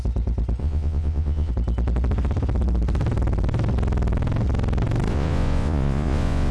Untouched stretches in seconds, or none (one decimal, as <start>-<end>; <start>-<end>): 0.0-0.6; 1.5-5.1